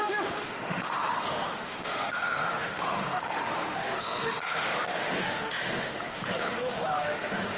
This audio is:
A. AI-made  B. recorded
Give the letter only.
A